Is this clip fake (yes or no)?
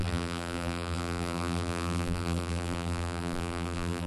yes